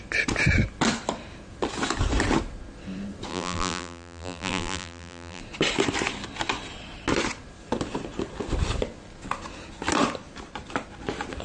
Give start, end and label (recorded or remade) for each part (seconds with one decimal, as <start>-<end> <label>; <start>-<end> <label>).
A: 0.0-3.3 recorded; 3.3-5.4 remade; 5.4-11.4 recorded